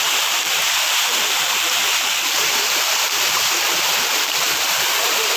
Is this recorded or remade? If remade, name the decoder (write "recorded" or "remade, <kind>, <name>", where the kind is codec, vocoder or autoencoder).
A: remade, vocoder, BigVGAN v2